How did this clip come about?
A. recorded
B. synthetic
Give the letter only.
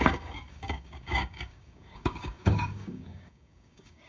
B